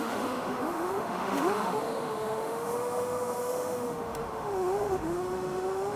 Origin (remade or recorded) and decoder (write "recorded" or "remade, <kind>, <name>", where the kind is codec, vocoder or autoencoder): remade, autoencoder, DAC-VAE